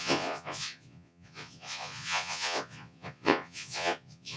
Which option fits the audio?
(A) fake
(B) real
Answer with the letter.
A